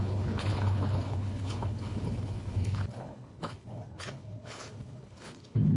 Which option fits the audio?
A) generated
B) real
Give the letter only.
A